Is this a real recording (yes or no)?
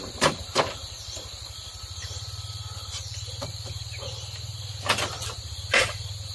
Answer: no